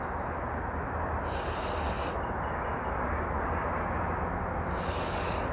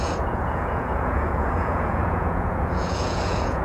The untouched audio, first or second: first